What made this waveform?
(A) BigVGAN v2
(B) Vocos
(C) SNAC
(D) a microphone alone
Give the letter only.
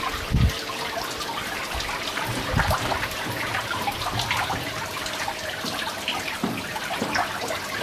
D